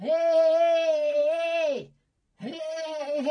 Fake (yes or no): no